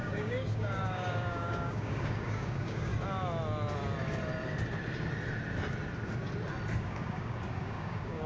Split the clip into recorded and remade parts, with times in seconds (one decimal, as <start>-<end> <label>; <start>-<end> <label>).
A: 0.0-2.9 remade; 2.9-6.8 recorded; 6.8-8.3 remade

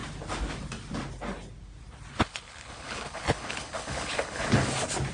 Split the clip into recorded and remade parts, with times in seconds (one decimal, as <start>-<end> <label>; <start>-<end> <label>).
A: 0.0-2.2 recorded; 2.2-4.5 remade; 4.5-5.1 recorded

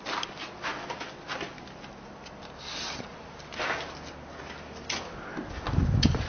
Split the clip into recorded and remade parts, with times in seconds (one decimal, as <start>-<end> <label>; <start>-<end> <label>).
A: 0.0-6.3 recorded

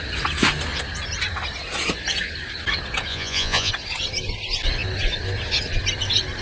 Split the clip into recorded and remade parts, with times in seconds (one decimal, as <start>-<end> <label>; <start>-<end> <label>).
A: 0.0-3.1 recorded; 3.1-3.7 remade; 3.7-6.4 recorded

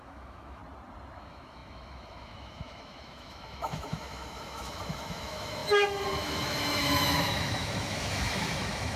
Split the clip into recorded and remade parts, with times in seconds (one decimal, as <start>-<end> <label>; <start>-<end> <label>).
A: 0.0-0.6 remade; 0.6-1.2 recorded; 1.2-9.0 remade

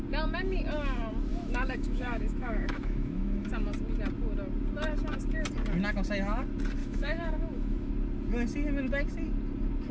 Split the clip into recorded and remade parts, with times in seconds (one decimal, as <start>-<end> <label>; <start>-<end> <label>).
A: 0.0-1.3 recorded; 1.3-3.5 remade; 3.5-6.8 recorded; 6.8-7.9 remade; 7.9-9.9 recorded

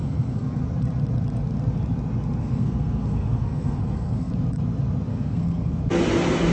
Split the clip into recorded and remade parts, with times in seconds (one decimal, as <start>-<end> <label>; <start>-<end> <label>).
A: 0.0-0.6 remade; 0.6-2.4 recorded; 2.4-4.3 remade; 4.3-5.1 recorded; 5.1-5.8 remade; 5.8-6.5 recorded

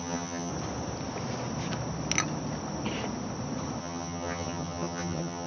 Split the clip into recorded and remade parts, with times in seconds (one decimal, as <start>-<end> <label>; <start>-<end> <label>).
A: 0.0-0.5 remade; 0.5-3.8 recorded; 3.8-5.5 remade